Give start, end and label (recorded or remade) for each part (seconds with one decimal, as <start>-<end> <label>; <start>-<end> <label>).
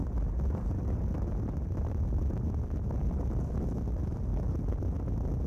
0.0-4.3 remade; 4.3-5.5 recorded